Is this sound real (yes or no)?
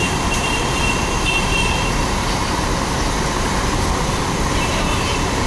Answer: no